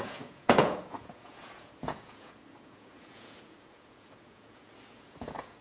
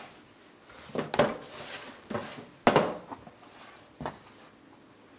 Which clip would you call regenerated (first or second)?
first